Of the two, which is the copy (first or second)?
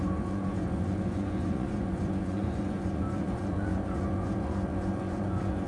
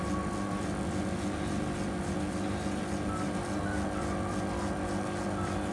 first